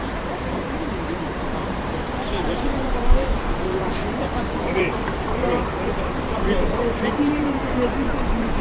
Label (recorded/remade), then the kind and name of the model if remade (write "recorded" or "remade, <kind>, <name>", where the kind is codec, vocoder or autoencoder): remade, vocoder, BigVGAN v2